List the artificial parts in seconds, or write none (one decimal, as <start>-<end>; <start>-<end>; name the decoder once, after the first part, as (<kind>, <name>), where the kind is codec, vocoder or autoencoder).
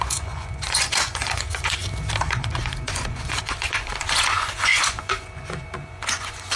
0.0-1.8 (vocoder, Vocos); 2.3-6.6